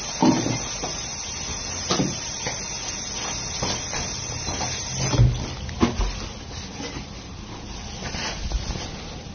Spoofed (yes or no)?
no